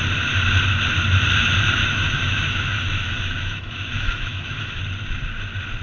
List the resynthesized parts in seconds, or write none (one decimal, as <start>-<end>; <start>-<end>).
1.8-4.8

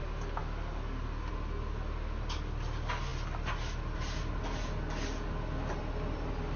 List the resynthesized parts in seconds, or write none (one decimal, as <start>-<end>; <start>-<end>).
none

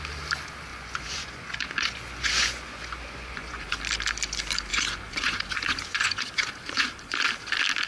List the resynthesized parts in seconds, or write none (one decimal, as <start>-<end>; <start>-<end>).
0.7-3.8; 4.7-7.2

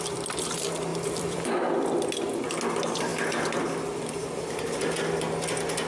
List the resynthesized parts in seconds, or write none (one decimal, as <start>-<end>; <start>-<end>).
0.9-2.1